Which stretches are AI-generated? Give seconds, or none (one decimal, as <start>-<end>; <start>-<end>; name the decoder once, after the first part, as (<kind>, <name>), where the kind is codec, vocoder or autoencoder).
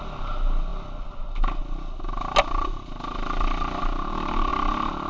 none